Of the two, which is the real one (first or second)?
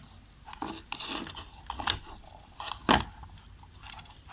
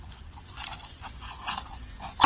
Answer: first